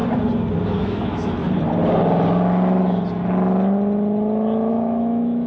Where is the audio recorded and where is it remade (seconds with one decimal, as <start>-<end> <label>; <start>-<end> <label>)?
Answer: 0.0-0.8 recorded; 0.8-1.4 remade; 1.4-4.7 recorded; 4.7-5.5 remade